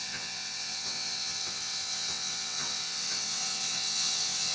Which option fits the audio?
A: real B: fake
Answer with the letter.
B